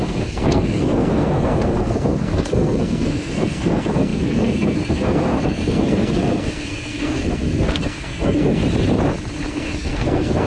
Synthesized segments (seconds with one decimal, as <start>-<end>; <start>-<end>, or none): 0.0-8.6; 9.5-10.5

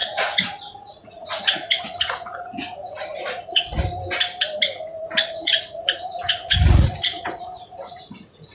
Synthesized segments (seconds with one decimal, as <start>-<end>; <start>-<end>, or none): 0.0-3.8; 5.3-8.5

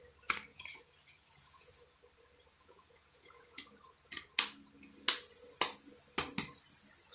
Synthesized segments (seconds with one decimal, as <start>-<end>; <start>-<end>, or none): 0.5-1.7; 2.5-3.6